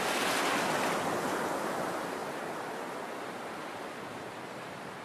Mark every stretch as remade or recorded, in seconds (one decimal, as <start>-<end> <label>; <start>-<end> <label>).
0.0-5.0 recorded